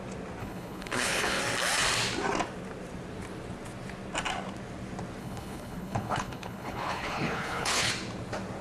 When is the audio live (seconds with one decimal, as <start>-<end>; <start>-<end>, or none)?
0.0-0.4; 1.4-5.2; 7.9-8.6